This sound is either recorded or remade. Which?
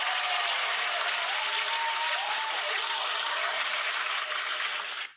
recorded